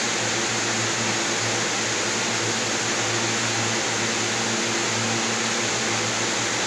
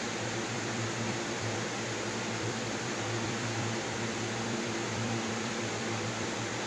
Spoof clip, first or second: second